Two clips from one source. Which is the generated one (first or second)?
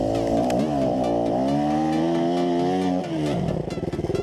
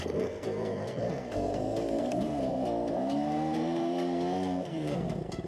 second